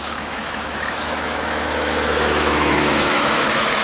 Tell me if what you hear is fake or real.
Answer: fake